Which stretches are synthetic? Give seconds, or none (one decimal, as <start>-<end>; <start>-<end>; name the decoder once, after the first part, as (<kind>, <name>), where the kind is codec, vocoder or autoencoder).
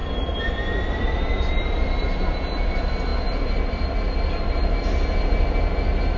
none